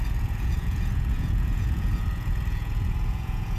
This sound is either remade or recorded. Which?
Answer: remade